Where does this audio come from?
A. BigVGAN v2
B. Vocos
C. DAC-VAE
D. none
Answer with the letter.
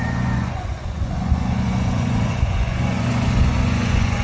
B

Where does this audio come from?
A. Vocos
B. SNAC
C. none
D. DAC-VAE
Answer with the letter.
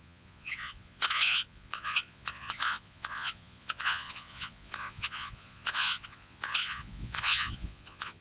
A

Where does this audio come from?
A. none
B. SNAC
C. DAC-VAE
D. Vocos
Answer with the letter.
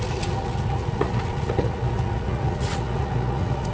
D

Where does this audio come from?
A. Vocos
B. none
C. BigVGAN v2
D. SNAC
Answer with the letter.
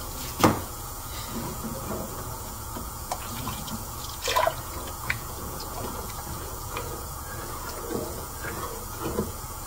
A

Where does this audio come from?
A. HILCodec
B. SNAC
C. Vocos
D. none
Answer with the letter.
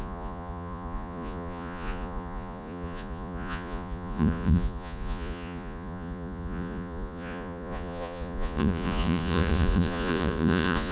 C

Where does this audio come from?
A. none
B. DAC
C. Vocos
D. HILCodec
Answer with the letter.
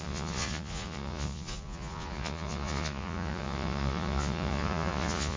C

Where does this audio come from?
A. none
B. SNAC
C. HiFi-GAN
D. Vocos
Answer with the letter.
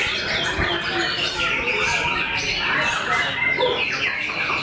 A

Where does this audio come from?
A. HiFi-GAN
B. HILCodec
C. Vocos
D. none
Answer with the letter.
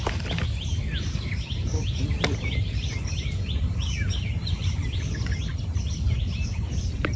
D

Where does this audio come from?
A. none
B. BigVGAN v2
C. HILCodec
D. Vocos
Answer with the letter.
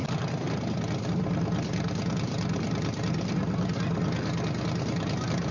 A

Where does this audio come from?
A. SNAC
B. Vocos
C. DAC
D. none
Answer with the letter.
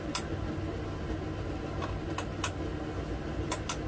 D